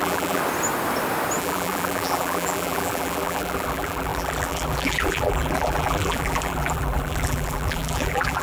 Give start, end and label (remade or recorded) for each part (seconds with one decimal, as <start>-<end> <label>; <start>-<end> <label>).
0.0-0.4 remade; 0.4-1.4 recorded; 1.4-8.4 remade